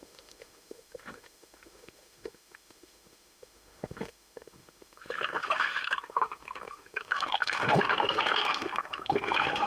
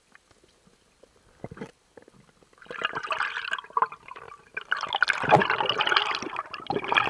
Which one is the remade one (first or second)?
first